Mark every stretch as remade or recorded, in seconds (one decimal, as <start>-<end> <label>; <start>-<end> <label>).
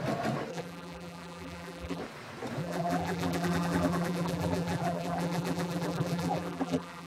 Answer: 0.0-0.5 recorded; 0.5-2.0 remade; 2.0-2.6 recorded; 2.6-7.1 remade